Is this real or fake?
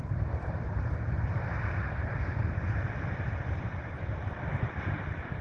fake